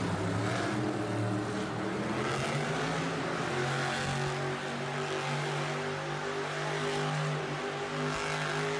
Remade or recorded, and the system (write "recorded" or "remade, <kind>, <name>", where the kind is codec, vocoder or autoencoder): recorded